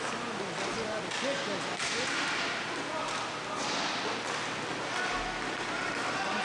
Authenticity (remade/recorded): recorded